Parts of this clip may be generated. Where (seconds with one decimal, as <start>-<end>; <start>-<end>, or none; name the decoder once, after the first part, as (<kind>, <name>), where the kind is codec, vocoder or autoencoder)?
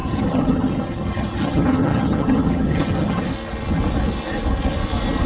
0.0-3.2 (vocoder, HiFi-GAN)